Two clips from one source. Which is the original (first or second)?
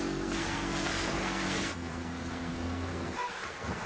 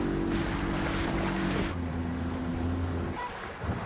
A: second